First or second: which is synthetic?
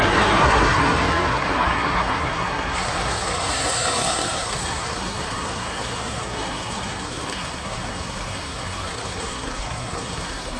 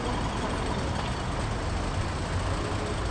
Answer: first